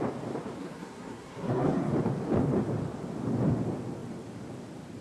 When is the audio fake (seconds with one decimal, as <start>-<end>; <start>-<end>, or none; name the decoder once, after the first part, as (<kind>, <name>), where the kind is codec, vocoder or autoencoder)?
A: 0.6-1.9 (codec, SNAC)